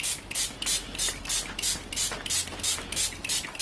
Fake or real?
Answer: real